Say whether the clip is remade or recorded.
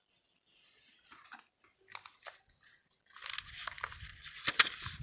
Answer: recorded